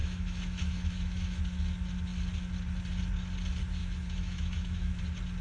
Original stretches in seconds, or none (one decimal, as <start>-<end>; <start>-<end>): 1.4-3.8; 5.0-5.4